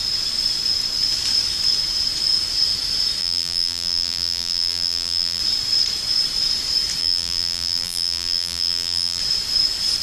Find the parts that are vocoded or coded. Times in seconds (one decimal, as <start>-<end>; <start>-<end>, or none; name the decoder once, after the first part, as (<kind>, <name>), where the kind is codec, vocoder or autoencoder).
3.2-5.4 (vocoder, BigVGAN v2); 7.0-9.2